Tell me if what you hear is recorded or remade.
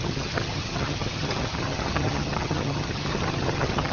remade